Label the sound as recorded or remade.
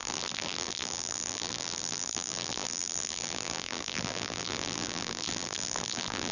remade